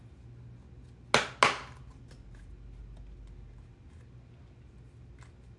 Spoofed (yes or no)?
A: no